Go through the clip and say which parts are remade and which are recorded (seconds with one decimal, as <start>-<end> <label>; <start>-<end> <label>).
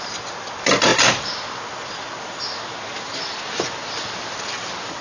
0.0-5.0 recorded